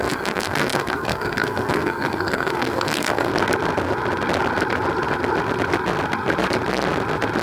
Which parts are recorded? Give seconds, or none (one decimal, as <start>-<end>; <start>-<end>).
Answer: 3.3-7.4